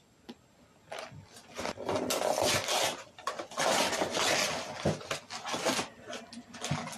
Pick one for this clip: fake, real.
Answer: real